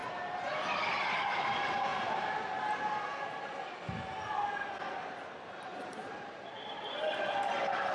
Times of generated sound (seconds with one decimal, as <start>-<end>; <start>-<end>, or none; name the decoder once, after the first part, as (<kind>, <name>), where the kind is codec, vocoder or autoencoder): 0.0-1.4 (vocoder, BigVGAN v2); 5.7-7.0